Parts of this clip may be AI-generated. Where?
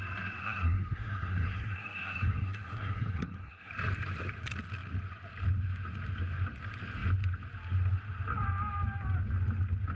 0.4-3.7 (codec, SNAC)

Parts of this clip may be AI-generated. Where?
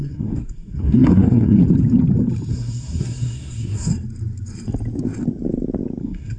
0.0-1.6 (codec, SNAC); 2.5-3.9; 6.0-6.4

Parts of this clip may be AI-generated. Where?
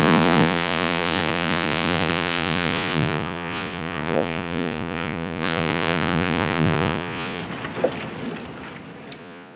0.0-7.4 (vocoder, Vocos); 9.2-9.6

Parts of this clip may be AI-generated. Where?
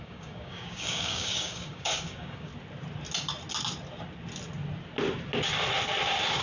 0.0-2.5 (codec, DAC)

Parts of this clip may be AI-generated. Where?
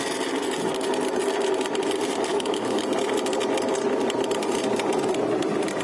2.3-2.8 (autoencoder, DAC-VAE)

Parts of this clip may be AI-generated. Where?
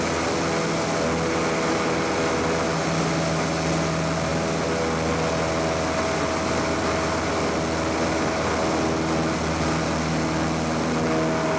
none